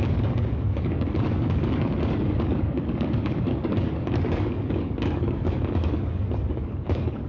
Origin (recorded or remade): remade